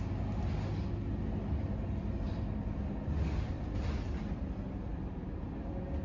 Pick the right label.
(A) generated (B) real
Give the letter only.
B